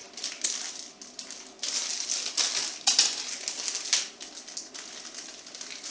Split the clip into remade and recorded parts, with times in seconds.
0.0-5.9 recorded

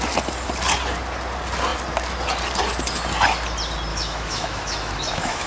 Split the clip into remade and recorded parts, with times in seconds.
0.0-3.9 recorded; 3.9-5.5 remade

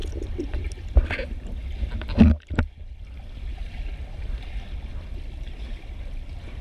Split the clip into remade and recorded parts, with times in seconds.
0.0-6.6 recorded